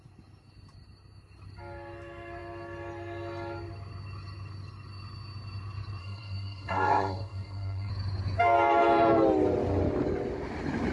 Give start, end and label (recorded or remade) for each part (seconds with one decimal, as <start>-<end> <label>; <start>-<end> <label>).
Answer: 0.0-6.0 recorded; 6.0-7.9 remade; 7.9-10.9 recorded